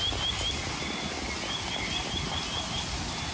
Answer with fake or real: real